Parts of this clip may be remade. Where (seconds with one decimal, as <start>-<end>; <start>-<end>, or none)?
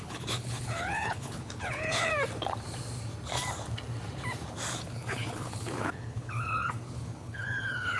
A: 0.0-2.1; 4.8-8.0